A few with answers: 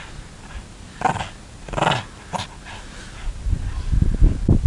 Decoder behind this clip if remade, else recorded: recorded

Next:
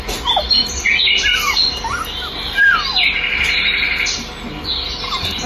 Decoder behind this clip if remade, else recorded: recorded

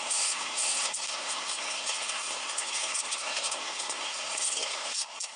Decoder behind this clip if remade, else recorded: remade, codec, SNAC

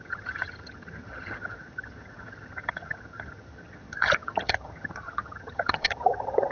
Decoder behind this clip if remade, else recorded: remade, vocoder, HiFi-GAN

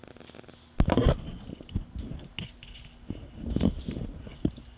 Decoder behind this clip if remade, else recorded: recorded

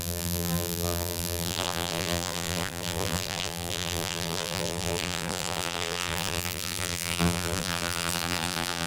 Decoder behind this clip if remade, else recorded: remade, vocoder, BigVGAN v2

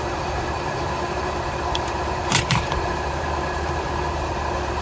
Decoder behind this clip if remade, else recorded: remade, vocoder, BigVGAN v2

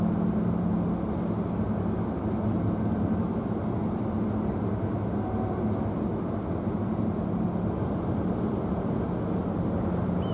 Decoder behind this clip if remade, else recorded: recorded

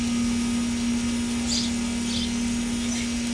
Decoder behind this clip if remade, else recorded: recorded